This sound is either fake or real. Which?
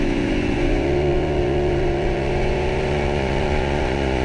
fake